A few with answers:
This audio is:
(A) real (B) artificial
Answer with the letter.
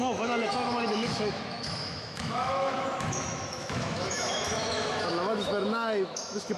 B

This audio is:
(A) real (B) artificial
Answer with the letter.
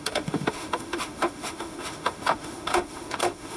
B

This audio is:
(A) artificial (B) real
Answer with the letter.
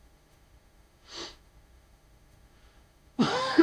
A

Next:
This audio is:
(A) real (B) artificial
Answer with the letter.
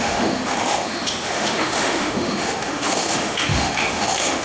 B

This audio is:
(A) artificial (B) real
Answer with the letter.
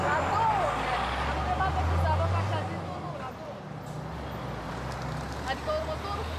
B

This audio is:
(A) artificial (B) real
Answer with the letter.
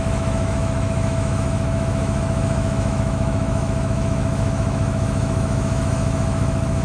A